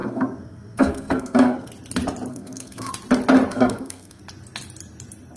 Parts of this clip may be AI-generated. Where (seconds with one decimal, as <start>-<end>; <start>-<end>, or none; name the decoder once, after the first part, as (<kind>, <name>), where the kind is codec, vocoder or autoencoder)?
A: 0.0-1.7 (codec, SNAC); 2.3-2.9; 3.5-4.2